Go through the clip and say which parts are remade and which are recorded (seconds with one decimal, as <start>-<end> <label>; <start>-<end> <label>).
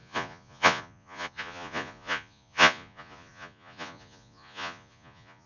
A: 0.0-5.5 remade